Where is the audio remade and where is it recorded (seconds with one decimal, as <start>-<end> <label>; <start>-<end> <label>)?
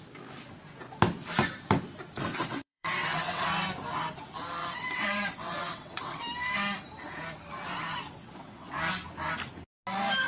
0.0-2.3 recorded; 2.3-3.5 remade; 3.5-4.6 recorded; 4.6-6.2 remade; 6.2-8.2 recorded; 8.2-8.7 remade; 8.7-10.3 recorded